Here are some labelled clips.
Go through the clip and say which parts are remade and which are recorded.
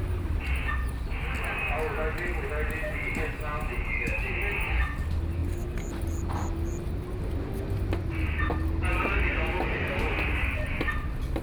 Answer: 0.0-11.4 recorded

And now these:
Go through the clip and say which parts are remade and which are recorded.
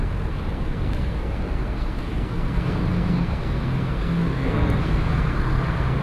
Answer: 0.0-6.0 remade